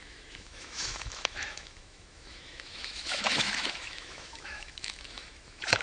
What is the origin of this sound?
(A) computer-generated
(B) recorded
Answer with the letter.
A